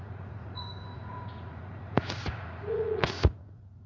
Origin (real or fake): fake